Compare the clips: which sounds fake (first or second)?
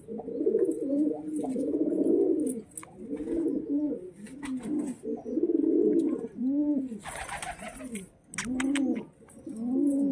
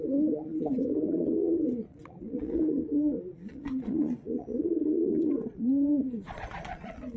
second